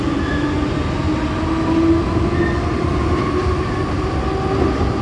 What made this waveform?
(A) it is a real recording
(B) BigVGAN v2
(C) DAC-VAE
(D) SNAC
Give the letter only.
A